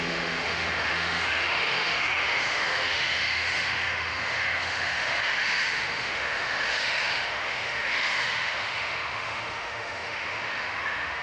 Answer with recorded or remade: remade